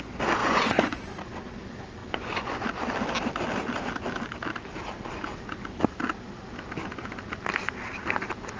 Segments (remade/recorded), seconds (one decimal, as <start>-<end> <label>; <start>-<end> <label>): 0.0-0.4 recorded; 0.4-1.0 remade; 1.0-2.0 recorded; 2.0-2.6 remade; 2.6-8.6 recorded